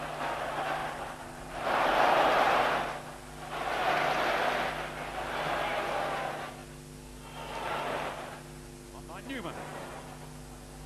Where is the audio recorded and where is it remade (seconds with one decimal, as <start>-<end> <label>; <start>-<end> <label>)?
0.0-0.8 recorded; 0.8-2.6 remade; 2.6-10.9 recorded